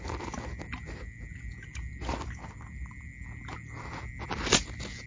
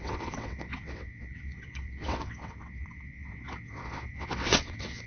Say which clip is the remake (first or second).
second